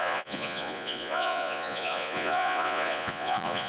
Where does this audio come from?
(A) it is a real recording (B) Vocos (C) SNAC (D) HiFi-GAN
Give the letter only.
B